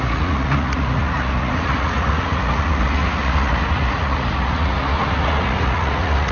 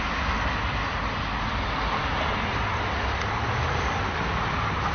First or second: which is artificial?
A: first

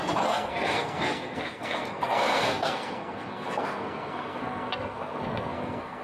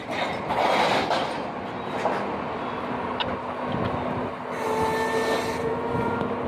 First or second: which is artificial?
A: first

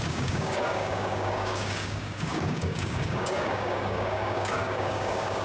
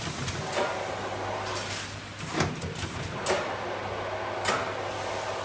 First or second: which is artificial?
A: first